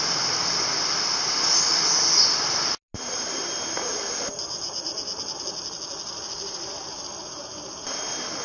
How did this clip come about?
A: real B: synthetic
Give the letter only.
A